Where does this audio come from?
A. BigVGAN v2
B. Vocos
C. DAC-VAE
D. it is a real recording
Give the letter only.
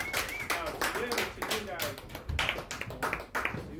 D